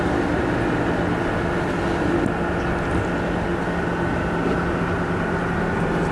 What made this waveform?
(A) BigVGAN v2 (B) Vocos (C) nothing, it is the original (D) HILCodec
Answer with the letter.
C